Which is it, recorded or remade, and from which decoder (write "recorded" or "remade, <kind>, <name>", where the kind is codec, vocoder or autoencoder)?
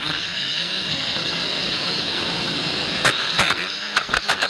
remade, codec, SNAC